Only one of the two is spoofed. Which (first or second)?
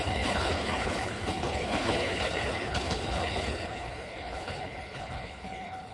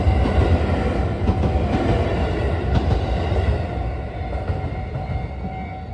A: first